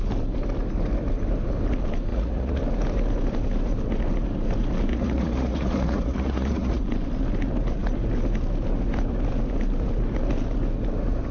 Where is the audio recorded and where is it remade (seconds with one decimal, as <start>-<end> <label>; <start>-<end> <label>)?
0.0-2.1 recorded; 2.1-2.6 remade; 2.6-4.9 recorded; 4.9-6.8 remade; 6.8-11.3 recorded